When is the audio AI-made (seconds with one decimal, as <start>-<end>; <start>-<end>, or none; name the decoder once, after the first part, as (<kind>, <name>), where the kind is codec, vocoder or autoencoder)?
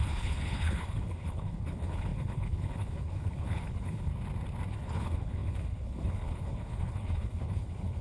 0.0-4.1 (codec, HILCodec); 4.7-8.0